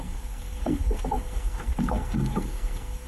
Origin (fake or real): fake